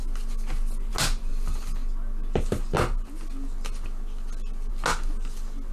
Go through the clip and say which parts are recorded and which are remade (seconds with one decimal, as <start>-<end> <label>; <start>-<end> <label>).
0.0-5.7 recorded